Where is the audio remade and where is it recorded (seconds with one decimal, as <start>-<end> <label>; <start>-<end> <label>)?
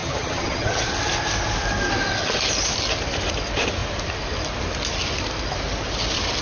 0.0-0.9 remade; 0.9-6.4 recorded